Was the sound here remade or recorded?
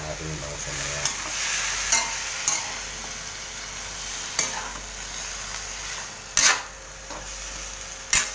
recorded